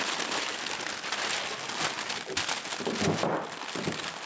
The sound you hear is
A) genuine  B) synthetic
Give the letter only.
A